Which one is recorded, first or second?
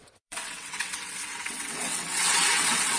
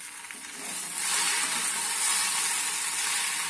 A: second